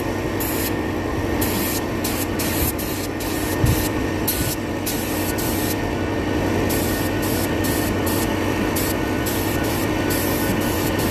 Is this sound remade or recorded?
recorded